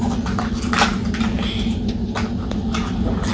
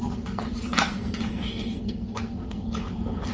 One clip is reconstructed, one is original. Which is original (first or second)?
first